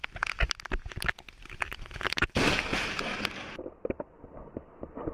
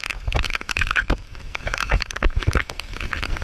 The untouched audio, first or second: first